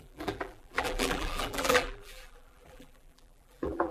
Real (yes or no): no